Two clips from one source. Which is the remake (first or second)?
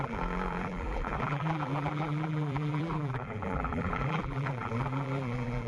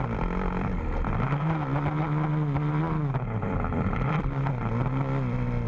first